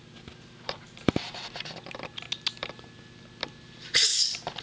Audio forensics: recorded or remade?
recorded